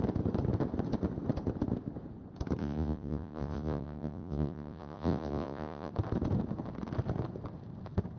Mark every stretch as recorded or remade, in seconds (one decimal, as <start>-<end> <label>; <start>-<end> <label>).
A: 0.0-2.6 recorded; 2.6-5.9 remade; 5.9-8.2 recorded

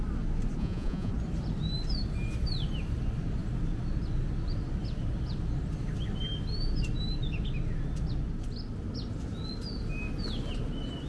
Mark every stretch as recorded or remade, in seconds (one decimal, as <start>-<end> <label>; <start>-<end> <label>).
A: 0.0-0.6 recorded; 0.6-1.1 remade; 1.1-11.1 recorded

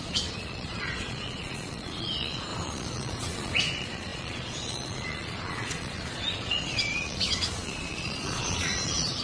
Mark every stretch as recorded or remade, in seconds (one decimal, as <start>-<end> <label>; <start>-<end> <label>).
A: 0.0-9.2 remade

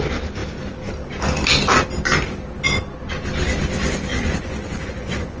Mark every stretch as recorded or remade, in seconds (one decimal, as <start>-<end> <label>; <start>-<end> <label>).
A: 0.0-4.1 recorded; 4.1-5.4 remade

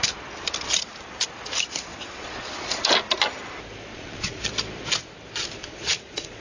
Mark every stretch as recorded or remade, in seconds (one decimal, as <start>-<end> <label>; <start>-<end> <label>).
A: 0.0-1.9 recorded; 1.9-2.5 remade; 2.5-3.9 recorded; 3.9-4.4 remade; 4.4-5.6 recorded; 5.6-6.4 remade

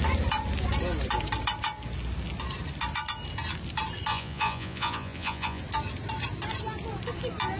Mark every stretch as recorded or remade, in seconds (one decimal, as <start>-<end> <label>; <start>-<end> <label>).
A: 0.0-4.1 recorded; 4.1-5.6 remade; 5.6-7.6 recorded

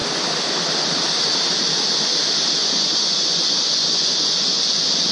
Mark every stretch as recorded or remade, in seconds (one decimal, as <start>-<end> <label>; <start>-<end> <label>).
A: 0.0-2.6 recorded; 2.6-5.1 remade

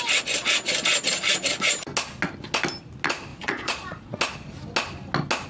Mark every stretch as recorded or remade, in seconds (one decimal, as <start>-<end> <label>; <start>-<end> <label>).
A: 0.0-3.3 recorded; 3.3-4.2 remade; 4.2-5.5 recorded